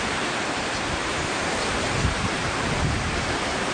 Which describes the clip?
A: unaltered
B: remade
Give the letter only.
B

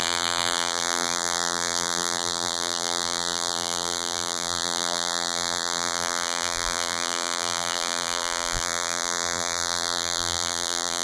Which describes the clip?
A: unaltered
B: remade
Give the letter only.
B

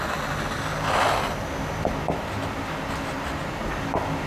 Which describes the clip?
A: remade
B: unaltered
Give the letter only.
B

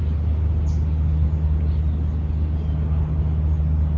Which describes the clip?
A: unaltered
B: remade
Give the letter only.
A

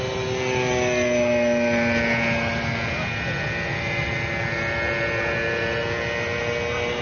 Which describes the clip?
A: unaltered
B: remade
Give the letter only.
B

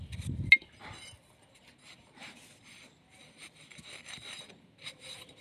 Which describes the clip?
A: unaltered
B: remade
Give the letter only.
A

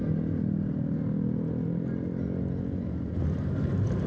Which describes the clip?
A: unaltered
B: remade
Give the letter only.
A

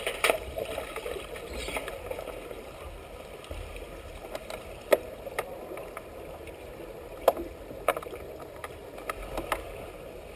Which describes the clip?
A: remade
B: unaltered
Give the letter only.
B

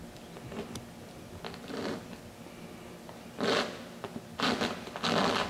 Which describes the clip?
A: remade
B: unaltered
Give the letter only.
B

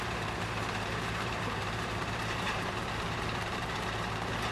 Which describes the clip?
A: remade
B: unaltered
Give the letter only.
A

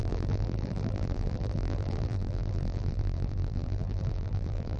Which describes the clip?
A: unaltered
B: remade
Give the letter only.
B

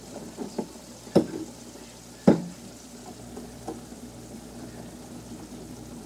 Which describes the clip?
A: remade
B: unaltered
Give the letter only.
A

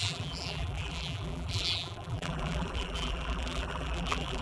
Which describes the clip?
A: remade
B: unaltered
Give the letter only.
A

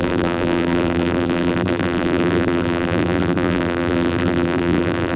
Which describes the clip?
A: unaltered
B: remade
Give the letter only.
B